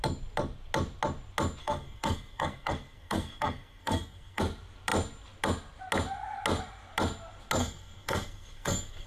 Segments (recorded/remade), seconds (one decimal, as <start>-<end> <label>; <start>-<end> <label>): 0.0-1.6 recorded; 1.6-4.4 remade; 4.4-7.6 recorded; 7.6-9.1 remade